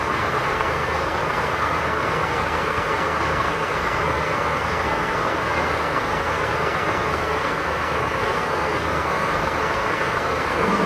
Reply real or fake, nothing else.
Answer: fake